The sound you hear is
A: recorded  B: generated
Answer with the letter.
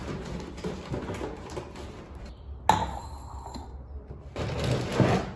A